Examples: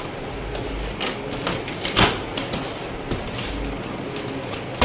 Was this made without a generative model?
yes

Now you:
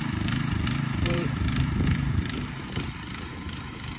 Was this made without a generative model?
no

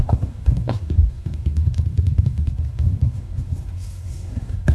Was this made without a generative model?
no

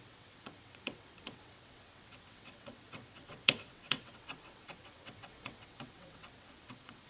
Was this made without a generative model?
no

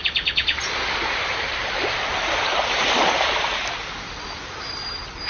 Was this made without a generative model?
yes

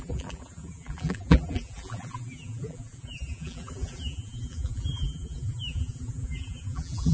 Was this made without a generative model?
no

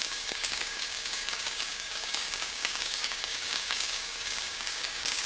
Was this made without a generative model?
no